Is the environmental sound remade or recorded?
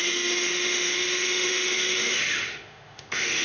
remade